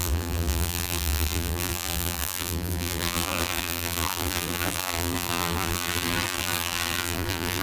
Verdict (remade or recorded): remade